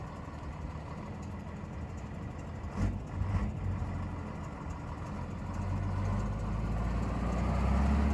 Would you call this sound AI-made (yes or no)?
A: no